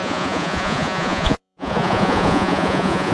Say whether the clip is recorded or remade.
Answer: remade